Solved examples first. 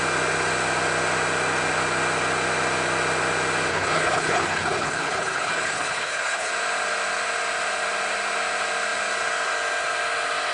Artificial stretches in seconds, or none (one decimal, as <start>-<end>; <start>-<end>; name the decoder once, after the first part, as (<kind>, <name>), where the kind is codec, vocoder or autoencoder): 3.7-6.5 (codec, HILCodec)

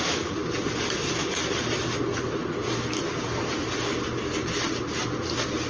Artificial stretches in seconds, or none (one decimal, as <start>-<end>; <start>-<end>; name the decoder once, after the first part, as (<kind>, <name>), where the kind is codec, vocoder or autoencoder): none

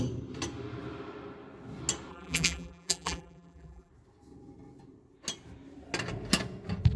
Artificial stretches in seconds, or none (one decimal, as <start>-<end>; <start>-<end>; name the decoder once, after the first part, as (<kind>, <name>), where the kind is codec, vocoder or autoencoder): 2.1-3.9 (vocoder, BigVGAN v2)

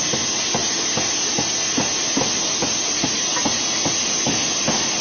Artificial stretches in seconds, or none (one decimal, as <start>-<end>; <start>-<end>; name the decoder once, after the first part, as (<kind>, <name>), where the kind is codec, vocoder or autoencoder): none

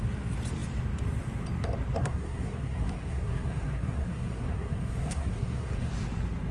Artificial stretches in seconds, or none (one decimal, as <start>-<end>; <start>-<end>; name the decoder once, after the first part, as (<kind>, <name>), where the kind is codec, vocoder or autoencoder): 2.0-5.9 (codec, SNAC)

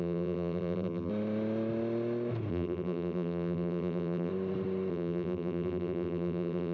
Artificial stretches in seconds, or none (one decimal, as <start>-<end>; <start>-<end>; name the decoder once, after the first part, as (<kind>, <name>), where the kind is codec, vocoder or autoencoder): 0.0-1.1 (vocoder, BigVGAN v2); 2.5-4.3; 4.9-6.7